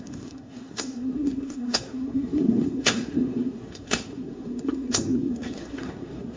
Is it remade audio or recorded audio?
remade